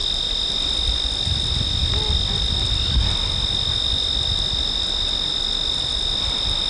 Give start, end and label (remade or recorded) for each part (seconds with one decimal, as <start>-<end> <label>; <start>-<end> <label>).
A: 0.0-6.7 recorded